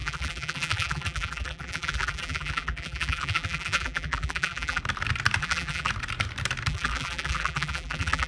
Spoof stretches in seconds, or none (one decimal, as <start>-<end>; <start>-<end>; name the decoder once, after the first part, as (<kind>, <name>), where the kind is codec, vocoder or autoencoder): 0.0-4.8 (vocoder, BigVGAN v2); 5.4-5.9; 6.7-8.3